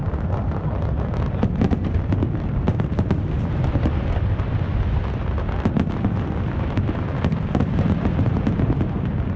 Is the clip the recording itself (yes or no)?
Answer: yes